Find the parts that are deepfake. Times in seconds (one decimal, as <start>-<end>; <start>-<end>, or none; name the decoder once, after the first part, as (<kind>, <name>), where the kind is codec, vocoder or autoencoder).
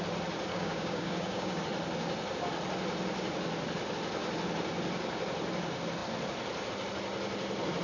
0.5-1.6 (codec, DAC)